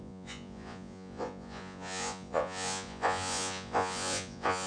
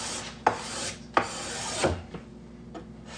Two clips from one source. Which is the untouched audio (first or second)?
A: second